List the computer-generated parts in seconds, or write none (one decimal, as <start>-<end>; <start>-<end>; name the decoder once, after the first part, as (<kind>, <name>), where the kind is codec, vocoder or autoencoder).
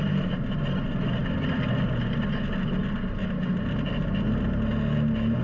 none